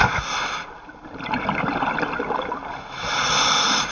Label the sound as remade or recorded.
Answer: recorded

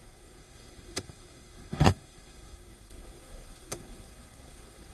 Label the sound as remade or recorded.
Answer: remade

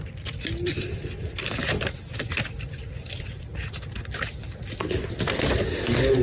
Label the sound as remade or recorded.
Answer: recorded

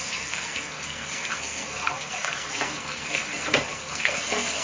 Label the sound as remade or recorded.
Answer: remade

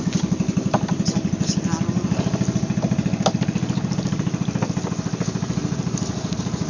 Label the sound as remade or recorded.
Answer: recorded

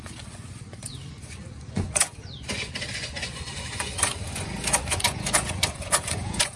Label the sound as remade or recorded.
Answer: remade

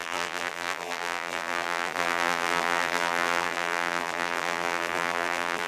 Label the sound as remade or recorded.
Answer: remade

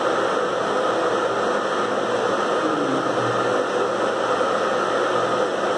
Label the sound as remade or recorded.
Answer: recorded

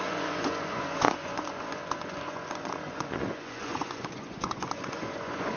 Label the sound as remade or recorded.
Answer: remade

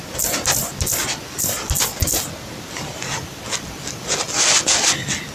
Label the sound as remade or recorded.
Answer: recorded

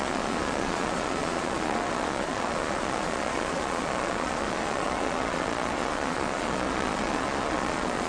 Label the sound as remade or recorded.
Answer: remade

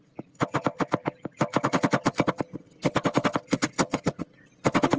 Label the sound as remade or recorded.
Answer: recorded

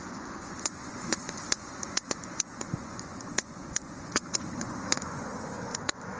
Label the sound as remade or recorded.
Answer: remade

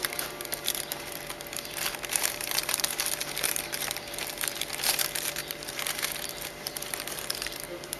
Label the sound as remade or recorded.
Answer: remade